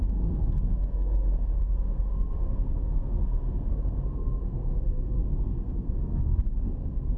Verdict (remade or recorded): remade